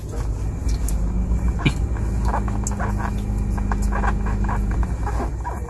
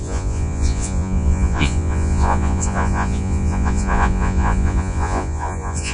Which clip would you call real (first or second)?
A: first